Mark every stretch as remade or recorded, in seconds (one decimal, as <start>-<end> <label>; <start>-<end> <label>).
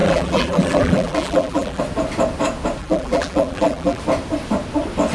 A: 0.0-1.8 remade; 1.8-2.8 recorded; 2.8-4.0 remade; 4.0-5.1 recorded